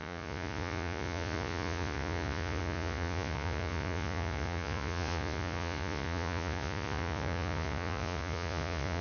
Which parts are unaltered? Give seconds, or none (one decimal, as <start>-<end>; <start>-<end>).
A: none